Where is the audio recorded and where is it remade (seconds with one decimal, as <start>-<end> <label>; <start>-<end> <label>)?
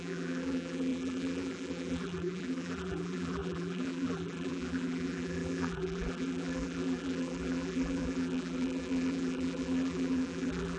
0.0-10.8 remade